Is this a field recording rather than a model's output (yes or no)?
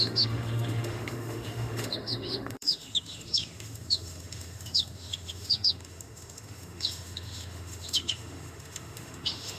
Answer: no